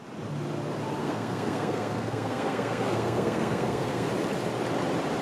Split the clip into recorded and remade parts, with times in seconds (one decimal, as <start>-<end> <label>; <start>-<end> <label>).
0.0-1.0 recorded; 1.0-4.1 remade; 4.1-5.2 recorded